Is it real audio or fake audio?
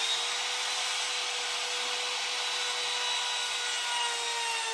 real